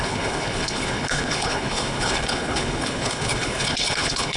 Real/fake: fake